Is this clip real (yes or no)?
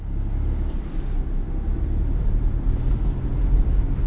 no